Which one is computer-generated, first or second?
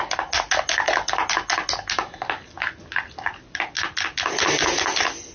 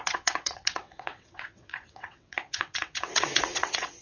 second